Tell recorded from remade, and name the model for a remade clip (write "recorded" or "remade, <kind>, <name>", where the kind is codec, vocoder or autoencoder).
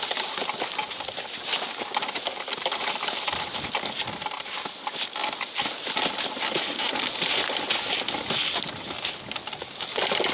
recorded